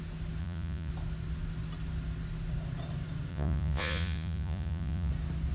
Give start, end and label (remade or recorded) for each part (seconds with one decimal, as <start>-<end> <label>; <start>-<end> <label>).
0.0-0.4 recorded; 0.4-0.9 remade; 0.9-3.3 recorded; 3.3-5.1 remade; 5.1-5.5 recorded